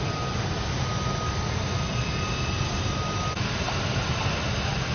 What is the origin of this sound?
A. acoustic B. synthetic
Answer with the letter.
A